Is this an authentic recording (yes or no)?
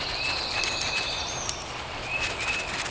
no